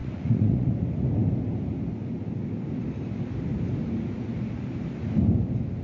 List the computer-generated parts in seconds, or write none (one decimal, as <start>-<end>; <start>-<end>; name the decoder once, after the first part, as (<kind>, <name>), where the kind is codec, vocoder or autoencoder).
0.0-0.7 (vocoder, Vocos)

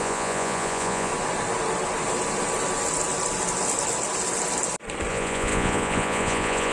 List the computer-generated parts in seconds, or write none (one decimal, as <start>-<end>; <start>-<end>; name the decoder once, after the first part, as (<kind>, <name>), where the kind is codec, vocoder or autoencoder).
0.0-1.1 (vocoder, Vocos); 5.1-6.7

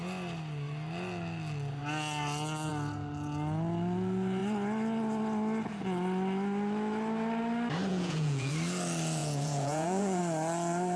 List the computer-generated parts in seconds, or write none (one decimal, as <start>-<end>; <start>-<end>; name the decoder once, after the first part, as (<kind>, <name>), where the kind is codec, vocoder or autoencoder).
7.9-8.5 (vocoder, Vocos); 9.2-10.2